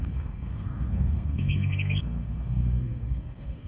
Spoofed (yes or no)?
yes